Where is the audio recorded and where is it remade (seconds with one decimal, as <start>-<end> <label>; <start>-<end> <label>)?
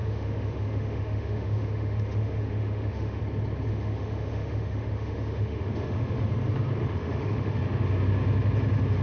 0.0-3.2 remade; 3.2-3.7 recorded; 3.7-6.3 remade; 6.3-6.8 recorded; 6.8-7.6 remade; 7.6-9.0 recorded